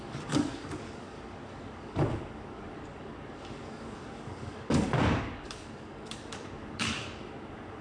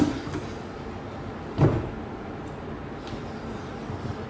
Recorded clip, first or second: second